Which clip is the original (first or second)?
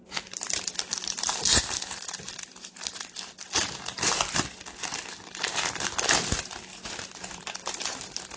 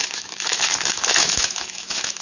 first